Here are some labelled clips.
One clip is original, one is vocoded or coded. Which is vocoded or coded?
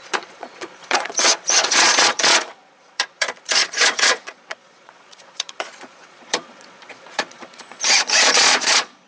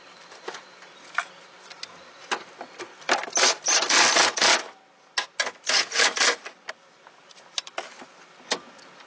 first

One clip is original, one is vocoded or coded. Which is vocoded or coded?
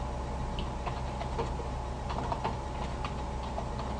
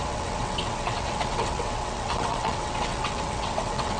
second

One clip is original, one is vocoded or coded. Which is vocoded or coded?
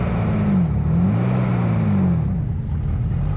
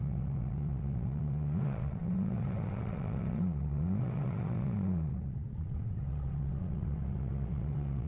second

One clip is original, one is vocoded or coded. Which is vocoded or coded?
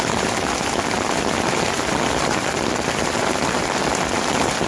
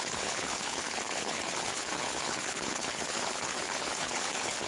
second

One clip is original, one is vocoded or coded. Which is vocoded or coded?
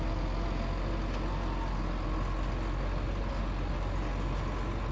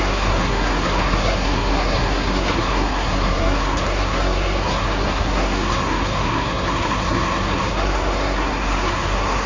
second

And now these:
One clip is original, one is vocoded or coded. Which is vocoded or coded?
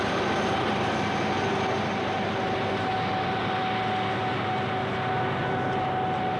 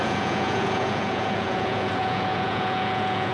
second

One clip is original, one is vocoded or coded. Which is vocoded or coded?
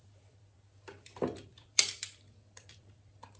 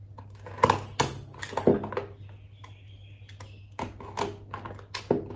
first